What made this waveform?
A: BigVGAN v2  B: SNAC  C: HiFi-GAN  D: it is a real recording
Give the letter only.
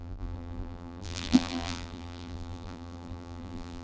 A